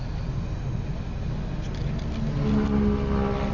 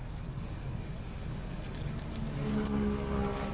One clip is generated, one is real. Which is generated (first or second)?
second